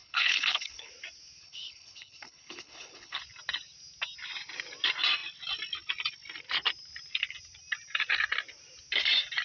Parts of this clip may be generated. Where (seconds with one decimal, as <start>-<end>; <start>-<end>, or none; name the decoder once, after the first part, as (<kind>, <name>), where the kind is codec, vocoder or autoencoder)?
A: 0.0-0.9 (codec, HILCodec); 1.4-3.2